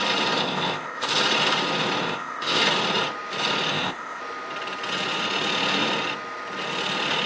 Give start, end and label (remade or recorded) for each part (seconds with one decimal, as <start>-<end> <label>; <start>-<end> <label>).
0.0-0.4 recorded; 0.4-1.1 remade; 1.1-2.0 recorded; 2.0-2.6 remade; 2.6-3.7 recorded; 3.7-4.2 remade; 4.2-7.3 recorded